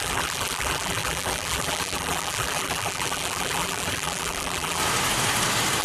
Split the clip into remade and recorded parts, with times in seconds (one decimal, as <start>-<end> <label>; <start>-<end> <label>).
0.0-4.8 remade; 4.8-5.8 recorded